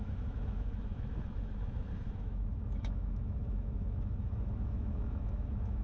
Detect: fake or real fake